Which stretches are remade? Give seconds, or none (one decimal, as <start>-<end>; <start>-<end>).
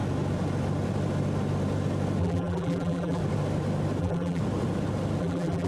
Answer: 2.2-3.2; 4.0-4.4; 5.2-5.7